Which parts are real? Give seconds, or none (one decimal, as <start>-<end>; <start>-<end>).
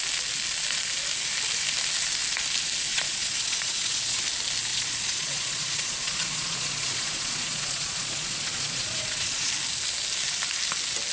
0.0-2.9; 4.2-4.7; 9.5-11.1